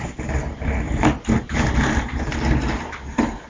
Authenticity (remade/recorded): recorded